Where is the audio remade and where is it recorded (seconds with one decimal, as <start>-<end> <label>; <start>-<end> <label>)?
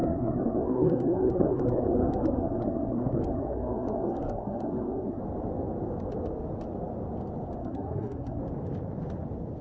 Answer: 0.0-5.2 remade; 5.2-7.6 recorded; 7.6-8.4 remade; 8.4-9.6 recorded